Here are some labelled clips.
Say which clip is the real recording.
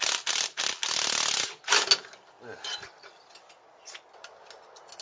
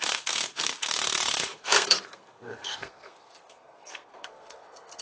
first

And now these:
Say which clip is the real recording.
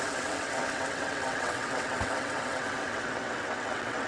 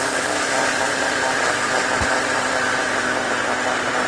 second